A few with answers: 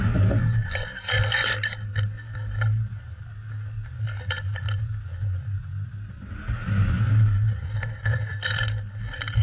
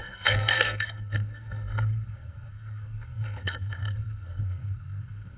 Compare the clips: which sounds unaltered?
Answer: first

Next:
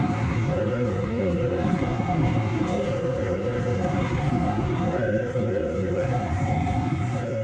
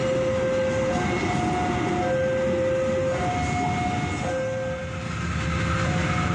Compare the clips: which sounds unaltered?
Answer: second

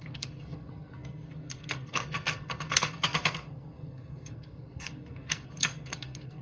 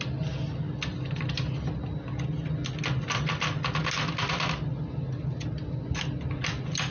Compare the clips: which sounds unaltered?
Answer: second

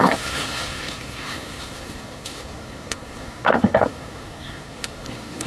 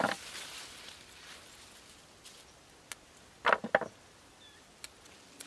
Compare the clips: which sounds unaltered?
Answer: second